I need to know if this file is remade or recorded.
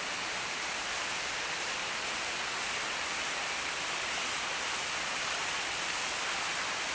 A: recorded